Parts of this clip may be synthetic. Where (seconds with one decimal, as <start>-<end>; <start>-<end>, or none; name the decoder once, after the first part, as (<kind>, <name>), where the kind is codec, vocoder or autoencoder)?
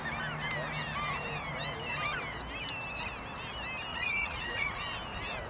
3.9-4.8 (vocoder, Vocos)